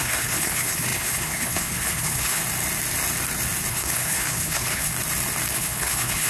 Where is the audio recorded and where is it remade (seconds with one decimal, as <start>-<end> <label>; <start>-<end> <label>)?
0.0-2.4 remade; 2.4-3.7 recorded; 3.7-4.9 remade; 4.9-5.5 recorded; 5.5-6.3 remade